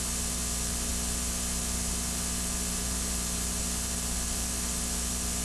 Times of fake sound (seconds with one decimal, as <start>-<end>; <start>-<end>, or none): 0.9-3.6